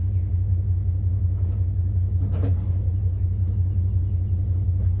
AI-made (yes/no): no